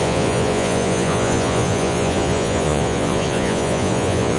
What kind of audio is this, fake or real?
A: fake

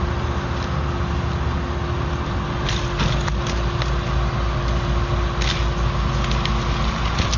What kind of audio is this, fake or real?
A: real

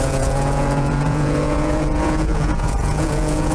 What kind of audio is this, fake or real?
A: fake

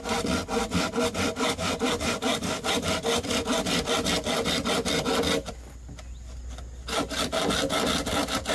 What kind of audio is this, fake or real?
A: real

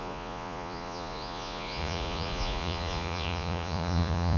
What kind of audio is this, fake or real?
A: fake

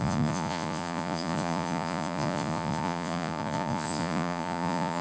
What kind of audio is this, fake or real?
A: fake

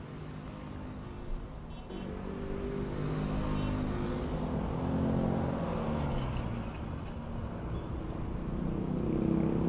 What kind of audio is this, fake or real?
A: real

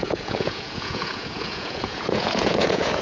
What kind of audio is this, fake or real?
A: fake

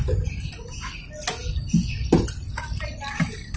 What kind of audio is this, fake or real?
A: real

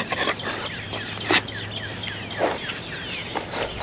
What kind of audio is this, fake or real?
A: real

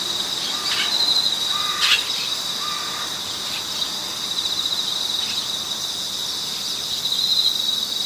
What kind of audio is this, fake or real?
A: real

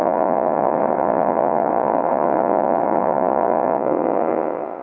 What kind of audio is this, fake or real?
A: fake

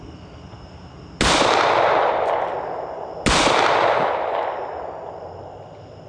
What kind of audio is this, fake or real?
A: real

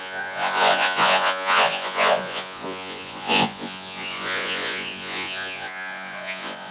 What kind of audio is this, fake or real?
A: fake